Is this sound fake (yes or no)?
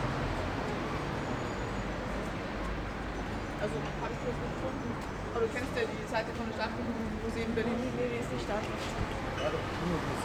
no